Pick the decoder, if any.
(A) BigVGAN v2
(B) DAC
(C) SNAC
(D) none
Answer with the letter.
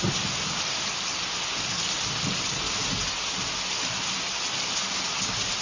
D